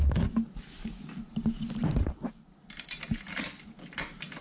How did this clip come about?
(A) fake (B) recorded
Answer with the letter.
B